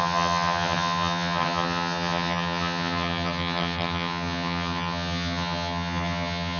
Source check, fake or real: fake